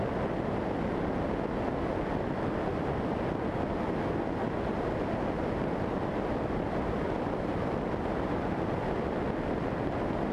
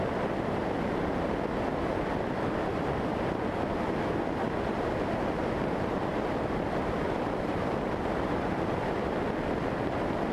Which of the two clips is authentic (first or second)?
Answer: first